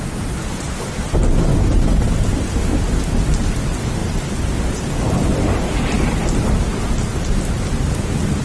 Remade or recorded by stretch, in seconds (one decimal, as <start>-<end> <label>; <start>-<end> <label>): 0.0-8.4 recorded